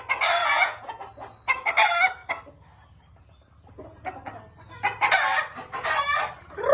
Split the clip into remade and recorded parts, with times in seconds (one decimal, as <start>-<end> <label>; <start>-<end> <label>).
0.0-0.4 recorded; 0.4-1.0 remade; 1.0-6.7 recorded